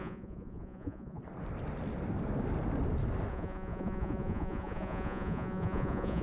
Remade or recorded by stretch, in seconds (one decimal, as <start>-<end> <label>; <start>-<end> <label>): 0.0-1.2 remade; 1.2-3.3 recorded; 3.3-6.2 remade

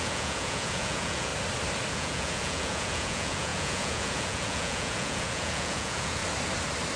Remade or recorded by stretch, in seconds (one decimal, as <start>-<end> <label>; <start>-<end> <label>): 0.0-1.3 remade; 1.3-1.9 recorded; 1.9-6.2 remade; 6.2-7.0 recorded